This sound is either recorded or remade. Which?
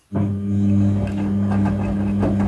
recorded